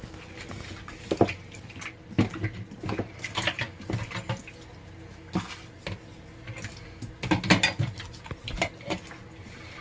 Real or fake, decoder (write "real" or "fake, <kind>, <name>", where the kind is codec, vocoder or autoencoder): real